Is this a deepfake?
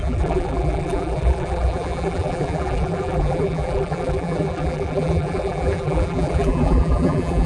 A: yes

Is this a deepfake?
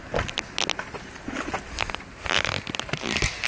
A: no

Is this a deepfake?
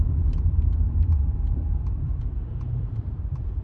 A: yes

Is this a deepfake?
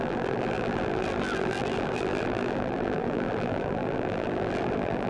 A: yes